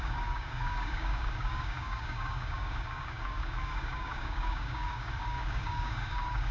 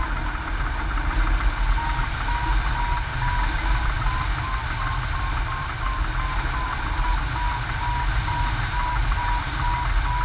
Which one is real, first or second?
second